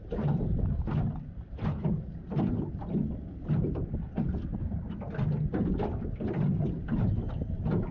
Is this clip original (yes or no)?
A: yes